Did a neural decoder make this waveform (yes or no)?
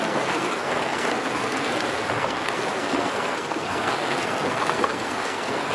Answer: yes